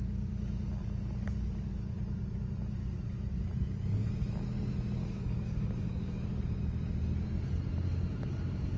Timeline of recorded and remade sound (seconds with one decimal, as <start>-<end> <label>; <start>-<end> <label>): 0.0-5.0 recorded; 5.0-6.4 remade; 6.4-8.8 recorded